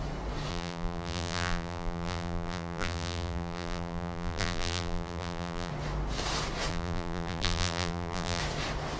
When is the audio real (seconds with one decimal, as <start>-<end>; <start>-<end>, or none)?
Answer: 0.0-0.5; 5.7-6.7; 8.4-9.0